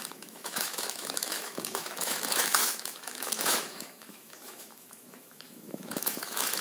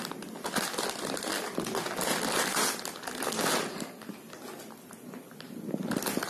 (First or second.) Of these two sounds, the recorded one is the second